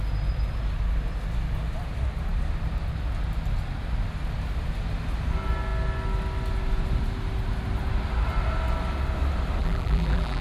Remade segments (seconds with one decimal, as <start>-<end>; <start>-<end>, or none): 9.6-10.4